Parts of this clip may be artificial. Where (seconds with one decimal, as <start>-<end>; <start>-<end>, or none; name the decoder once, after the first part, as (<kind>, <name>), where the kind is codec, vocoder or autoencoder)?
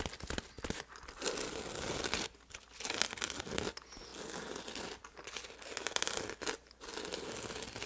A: none